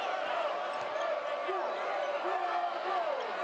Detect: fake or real real